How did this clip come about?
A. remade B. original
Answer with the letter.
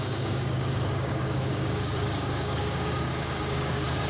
A